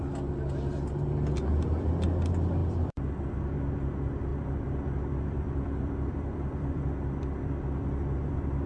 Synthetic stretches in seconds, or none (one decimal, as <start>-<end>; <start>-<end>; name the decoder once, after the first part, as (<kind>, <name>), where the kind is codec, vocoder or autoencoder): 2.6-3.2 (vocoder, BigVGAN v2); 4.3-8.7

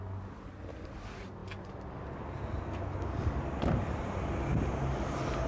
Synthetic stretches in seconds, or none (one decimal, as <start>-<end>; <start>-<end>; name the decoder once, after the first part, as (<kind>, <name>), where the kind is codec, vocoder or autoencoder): none

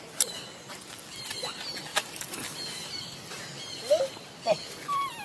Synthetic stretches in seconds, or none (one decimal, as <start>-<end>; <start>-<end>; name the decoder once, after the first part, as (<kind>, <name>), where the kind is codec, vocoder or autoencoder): 1.9-2.9 (vocoder, BigVGAN v2)